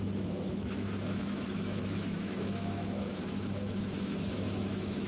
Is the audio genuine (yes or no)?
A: no